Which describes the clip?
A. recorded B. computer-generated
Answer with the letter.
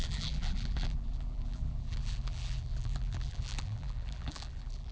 B